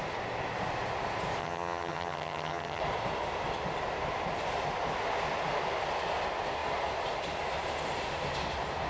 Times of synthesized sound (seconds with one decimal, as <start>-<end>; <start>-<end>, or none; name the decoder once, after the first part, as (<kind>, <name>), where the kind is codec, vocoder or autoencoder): 1.4-2.8 (vocoder, HiFi-GAN)